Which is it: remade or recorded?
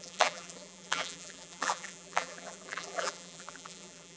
remade